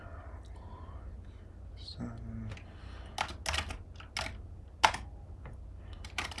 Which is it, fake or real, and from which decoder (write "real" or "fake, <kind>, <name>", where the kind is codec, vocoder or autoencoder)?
real